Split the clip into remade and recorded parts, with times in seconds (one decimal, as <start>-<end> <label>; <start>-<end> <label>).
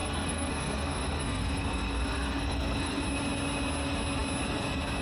0.0-3.0 remade; 3.0-5.0 recorded